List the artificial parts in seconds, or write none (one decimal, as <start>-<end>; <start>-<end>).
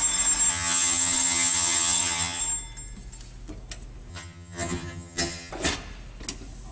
0.5-2.4; 4.1-5.5